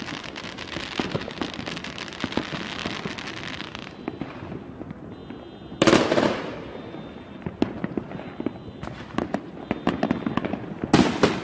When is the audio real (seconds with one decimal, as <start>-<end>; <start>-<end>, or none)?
0.0-11.4